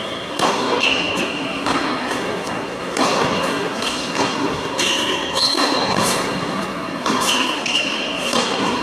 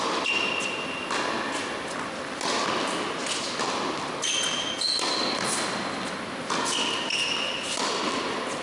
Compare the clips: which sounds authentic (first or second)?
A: second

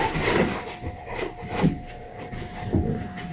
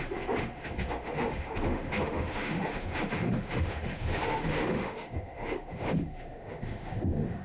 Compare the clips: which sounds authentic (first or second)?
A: first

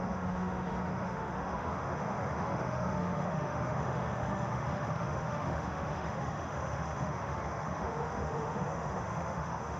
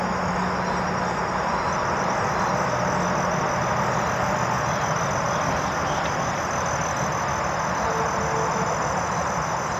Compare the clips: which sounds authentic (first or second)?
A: second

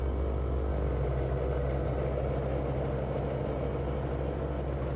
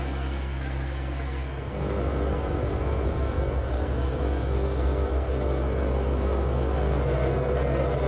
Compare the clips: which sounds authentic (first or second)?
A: first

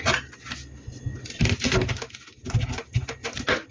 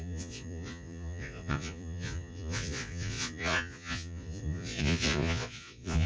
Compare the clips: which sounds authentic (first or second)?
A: first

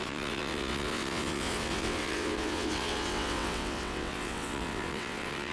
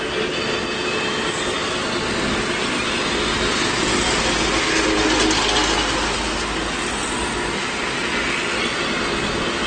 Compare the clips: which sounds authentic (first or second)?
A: second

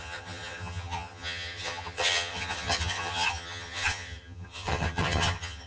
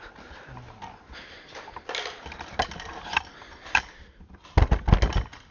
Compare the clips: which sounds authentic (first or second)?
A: second